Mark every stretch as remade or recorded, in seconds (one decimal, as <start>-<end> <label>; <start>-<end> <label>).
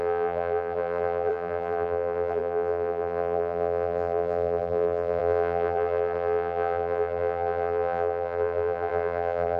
0.0-9.6 remade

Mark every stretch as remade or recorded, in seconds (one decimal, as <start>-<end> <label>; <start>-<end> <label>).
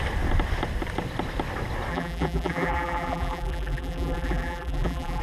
0.0-1.9 recorded; 1.9-5.2 remade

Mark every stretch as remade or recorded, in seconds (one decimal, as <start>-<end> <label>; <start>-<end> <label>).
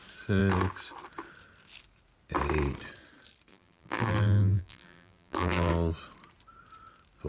0.0-3.5 recorded; 3.5-5.7 remade; 5.7-7.3 recorded